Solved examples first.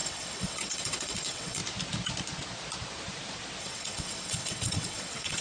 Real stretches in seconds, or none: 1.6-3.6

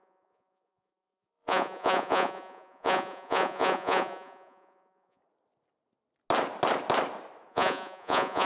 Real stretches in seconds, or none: 5.2-7.5

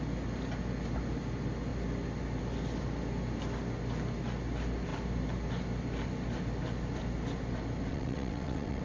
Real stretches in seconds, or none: 0.0-7.9

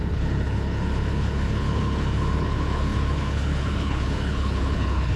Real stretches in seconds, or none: none